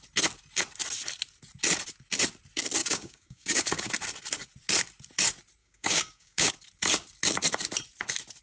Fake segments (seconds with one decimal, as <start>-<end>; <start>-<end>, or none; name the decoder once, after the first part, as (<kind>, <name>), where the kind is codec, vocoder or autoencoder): 2.8-3.9 (codec, DAC); 5.6-6.5